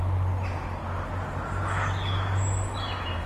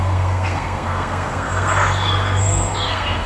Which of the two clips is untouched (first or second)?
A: first